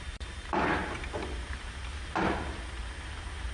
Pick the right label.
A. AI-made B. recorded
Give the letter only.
B